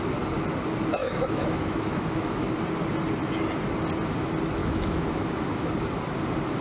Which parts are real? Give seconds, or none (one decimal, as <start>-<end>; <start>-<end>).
0.0-1.0; 2.5-4.6; 5.7-6.6